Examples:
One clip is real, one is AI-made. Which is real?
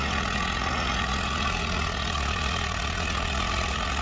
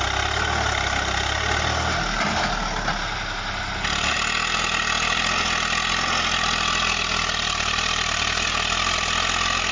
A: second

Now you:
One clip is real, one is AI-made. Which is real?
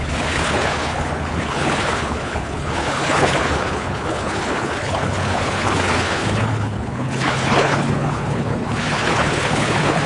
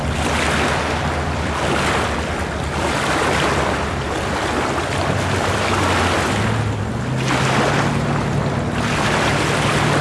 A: second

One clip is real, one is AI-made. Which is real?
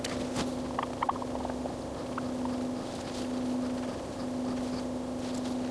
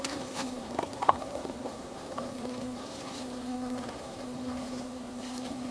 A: first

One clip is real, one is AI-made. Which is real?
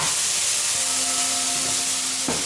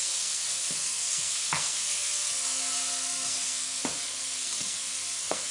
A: first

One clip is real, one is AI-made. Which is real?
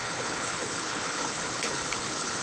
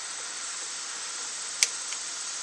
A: second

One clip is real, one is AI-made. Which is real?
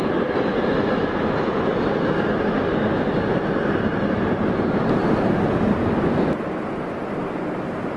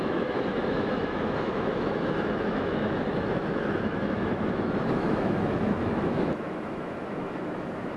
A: first